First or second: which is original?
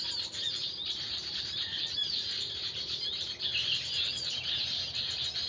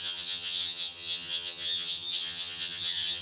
first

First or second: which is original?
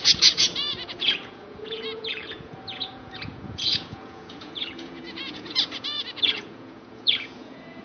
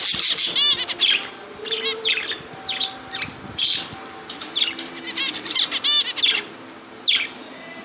second